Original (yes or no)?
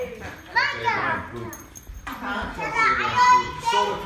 yes